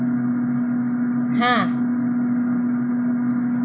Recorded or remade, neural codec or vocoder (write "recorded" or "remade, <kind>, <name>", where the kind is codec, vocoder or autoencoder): recorded